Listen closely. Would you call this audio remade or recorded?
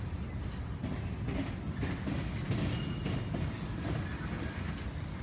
recorded